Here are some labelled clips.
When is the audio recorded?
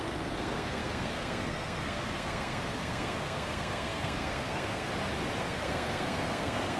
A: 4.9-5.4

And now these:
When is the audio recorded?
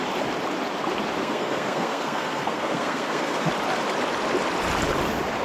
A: 0.0-1.2; 3.5-5.4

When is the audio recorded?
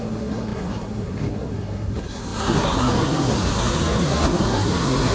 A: none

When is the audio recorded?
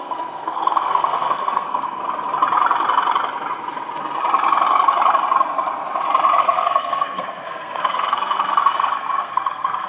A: 2.0-6.4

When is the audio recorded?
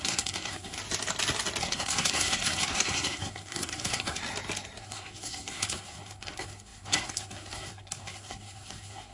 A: 0.8-1.6; 4.2-4.8